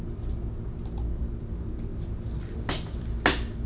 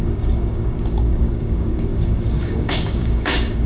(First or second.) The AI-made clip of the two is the second